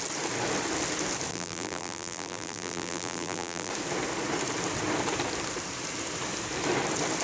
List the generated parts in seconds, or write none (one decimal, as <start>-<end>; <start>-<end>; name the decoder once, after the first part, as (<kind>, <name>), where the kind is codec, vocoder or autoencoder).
1.3-3.7 (vocoder, BigVGAN v2)